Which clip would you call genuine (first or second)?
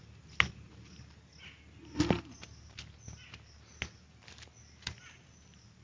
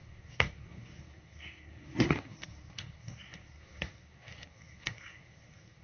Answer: first